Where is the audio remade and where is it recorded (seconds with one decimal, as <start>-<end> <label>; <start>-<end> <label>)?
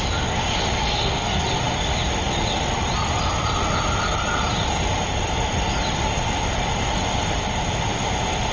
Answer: 0.0-0.8 recorded; 0.8-1.4 remade; 1.4-8.5 recorded